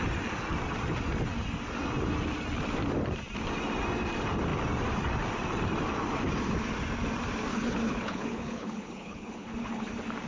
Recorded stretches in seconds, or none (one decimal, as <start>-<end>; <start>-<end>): 0.0-7.5; 9.9-10.3